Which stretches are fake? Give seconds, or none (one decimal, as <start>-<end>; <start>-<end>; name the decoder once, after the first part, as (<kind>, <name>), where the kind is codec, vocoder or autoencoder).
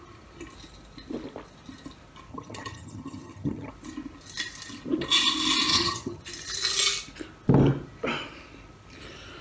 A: 2.3-3.7 (vocoder, HiFi-GAN); 5.7-6.2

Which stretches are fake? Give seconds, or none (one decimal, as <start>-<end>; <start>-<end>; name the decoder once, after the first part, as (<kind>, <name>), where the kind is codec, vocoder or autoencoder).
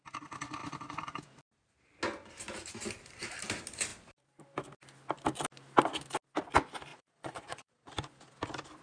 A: 6.9-7.9 (vocoder, Vocos)